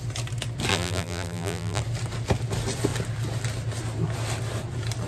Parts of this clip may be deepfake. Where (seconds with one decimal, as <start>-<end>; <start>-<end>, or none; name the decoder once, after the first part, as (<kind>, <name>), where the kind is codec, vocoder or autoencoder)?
0.7-1.8 (vocoder, BigVGAN v2)